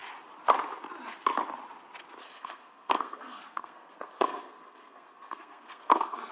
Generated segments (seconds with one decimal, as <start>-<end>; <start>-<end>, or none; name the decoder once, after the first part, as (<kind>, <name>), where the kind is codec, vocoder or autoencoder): 2.2-6.3 (codec, SNAC)

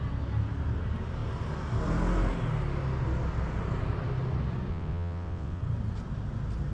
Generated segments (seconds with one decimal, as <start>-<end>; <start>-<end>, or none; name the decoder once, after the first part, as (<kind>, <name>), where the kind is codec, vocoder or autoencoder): 4.7-5.6 (vocoder, WaveNeXt)

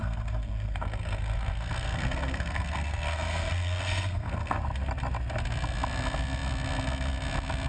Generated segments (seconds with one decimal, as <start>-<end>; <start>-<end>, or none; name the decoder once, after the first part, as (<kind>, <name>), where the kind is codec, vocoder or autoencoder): 0.0-4.6 (codec, SNAC)

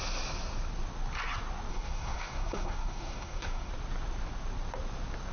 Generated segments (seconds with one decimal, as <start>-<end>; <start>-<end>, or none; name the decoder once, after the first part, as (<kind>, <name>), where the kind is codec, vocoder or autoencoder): 1.7-3.7 (codec, SNAC)